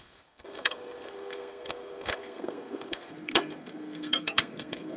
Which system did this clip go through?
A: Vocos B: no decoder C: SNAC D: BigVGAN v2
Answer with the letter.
C